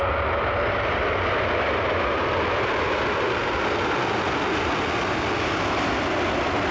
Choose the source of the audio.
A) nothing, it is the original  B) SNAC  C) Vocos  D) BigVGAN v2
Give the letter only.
A